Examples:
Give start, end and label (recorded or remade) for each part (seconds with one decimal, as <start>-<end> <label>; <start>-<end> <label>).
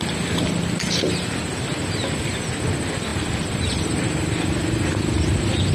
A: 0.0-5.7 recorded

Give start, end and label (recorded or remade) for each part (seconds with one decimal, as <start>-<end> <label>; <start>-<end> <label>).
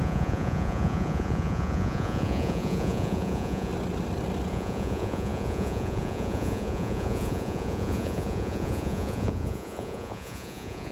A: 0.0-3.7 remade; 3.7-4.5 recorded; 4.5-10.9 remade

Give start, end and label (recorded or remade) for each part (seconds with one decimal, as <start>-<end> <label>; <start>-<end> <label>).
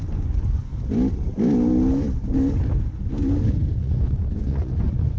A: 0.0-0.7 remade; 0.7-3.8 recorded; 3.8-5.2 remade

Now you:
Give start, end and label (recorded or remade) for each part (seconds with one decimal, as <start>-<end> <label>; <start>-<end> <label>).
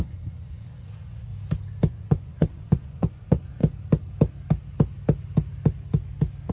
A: 0.0-1.3 remade; 1.3-1.9 recorded; 1.9-3.6 remade; 3.6-6.5 recorded